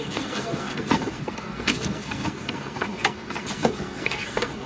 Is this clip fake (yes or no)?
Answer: yes